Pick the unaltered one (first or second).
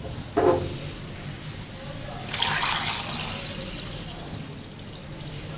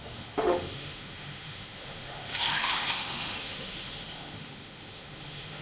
first